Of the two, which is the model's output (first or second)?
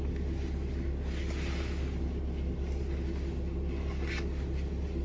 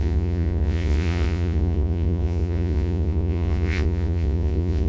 second